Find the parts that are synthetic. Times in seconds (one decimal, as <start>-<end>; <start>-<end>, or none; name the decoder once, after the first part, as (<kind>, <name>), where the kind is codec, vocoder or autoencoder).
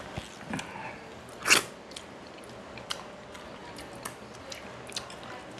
none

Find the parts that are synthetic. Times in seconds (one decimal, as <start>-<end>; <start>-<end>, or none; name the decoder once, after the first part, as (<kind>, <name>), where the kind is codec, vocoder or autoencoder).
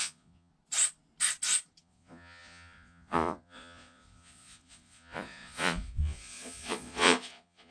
0.0-0.5 (vocoder, Vocos); 1.8-7.7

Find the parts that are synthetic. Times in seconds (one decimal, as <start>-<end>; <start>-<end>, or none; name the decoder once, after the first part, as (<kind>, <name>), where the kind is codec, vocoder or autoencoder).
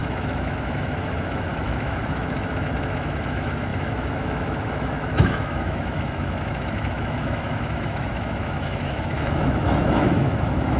0.0-10.8 (autoencoder, DAC-VAE)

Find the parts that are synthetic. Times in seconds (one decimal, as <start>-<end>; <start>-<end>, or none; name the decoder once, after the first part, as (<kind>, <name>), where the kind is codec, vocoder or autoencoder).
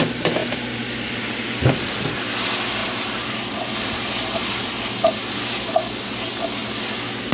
2.8-5.3 (vocoder, BigVGAN v2)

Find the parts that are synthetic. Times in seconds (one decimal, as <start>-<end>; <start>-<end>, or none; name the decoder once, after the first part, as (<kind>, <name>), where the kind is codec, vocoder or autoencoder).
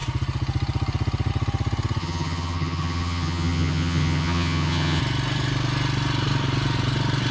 2.0-5.0 (vocoder, HiFi-GAN)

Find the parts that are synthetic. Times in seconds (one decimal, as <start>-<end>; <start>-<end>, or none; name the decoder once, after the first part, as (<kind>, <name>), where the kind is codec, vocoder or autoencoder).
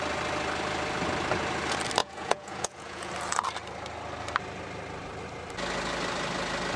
2.0-3.1 (vocoder, Vocos)